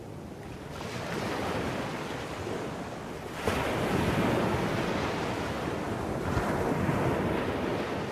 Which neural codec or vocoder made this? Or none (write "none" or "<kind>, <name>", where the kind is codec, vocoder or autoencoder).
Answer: none